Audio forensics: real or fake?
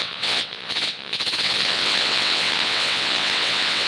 fake